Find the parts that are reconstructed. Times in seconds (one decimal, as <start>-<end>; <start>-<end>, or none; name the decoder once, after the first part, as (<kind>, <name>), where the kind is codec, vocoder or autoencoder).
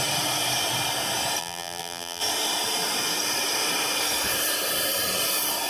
1.4-2.2 (vocoder, BigVGAN v2)